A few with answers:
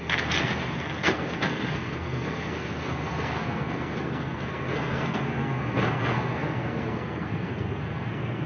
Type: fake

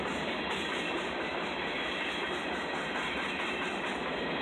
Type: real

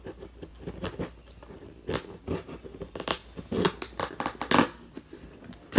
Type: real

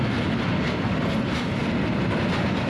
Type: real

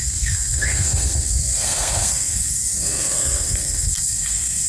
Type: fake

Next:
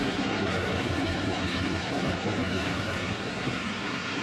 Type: fake